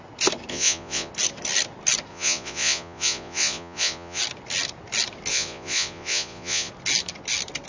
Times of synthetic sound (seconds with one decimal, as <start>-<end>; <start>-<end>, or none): 0.5-1.1; 2.1-4.2; 5.3-6.7